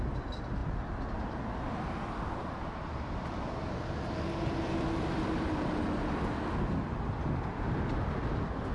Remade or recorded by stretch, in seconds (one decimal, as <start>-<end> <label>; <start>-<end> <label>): 0.0-8.7 recorded